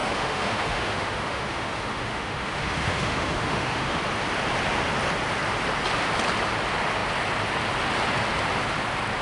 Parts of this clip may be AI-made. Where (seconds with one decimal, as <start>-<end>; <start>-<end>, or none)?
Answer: 0.0-4.0